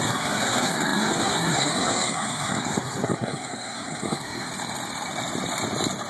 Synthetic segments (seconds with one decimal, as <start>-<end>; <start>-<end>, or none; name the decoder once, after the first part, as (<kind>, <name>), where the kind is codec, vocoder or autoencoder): 0.0-4.5 (codec, SNAC)